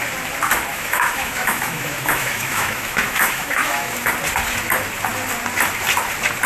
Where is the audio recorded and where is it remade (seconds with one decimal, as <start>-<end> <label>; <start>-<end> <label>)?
0.0-0.7 recorded; 0.7-4.1 remade; 4.1-6.5 recorded